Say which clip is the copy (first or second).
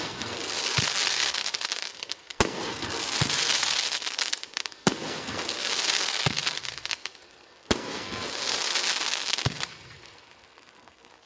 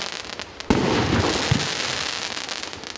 first